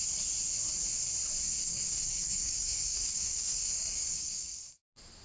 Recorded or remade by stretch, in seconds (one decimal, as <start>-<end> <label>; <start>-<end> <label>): 0.0-1.6 recorded; 1.6-4.7 remade; 4.7-5.2 recorded